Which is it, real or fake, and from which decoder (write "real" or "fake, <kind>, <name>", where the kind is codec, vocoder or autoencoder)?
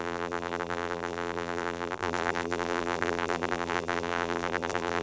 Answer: fake, vocoder, BigVGAN v2